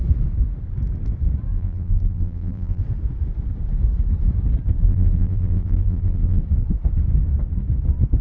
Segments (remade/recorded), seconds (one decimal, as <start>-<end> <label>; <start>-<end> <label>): 0.0-1.5 recorded; 1.5-2.8 remade; 2.8-4.8 recorded; 4.8-6.4 remade; 6.4-8.2 recorded